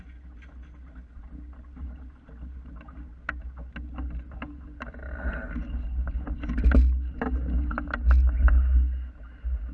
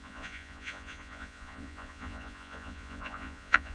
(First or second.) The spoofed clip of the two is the second